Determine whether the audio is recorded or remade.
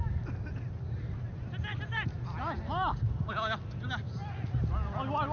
recorded